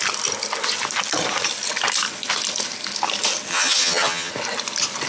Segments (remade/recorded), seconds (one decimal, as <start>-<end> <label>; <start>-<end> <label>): 0.0-3.5 recorded; 3.5-4.3 remade; 4.3-5.1 recorded